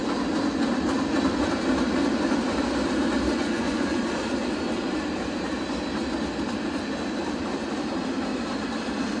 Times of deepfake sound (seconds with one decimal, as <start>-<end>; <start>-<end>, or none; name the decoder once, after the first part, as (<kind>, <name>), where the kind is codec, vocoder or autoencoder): 3.3-4.0 (vocoder, Vocos)